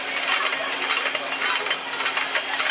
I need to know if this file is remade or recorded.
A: recorded